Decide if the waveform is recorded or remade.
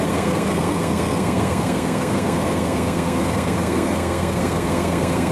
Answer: remade